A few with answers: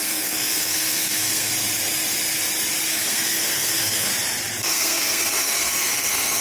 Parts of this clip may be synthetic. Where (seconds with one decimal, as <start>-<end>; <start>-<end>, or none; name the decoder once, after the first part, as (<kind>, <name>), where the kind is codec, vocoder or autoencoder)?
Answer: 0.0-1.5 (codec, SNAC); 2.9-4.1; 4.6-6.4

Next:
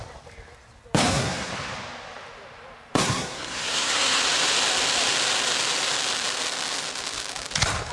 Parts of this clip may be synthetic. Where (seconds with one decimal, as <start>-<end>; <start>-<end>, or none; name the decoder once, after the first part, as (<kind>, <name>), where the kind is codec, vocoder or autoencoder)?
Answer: 1.0-1.5 (codec, SNAC); 3.0-4.2

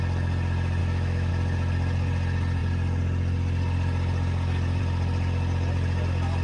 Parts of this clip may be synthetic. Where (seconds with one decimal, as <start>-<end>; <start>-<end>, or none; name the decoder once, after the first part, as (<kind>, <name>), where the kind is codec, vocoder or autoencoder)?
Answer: 0.8-1.3 (autoencoder, DAC-VAE)